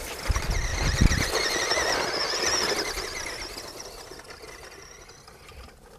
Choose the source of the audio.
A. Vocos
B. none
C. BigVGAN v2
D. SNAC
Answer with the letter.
B